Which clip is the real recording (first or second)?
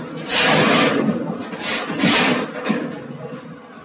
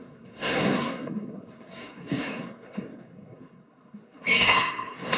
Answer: first